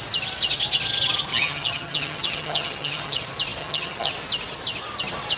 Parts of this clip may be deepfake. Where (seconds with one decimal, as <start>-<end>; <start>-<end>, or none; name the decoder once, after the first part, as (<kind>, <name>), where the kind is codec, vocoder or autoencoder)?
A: 1.3-3.2 (vocoder, HiFi-GAN); 3.6-4.1